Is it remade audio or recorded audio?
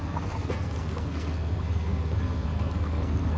remade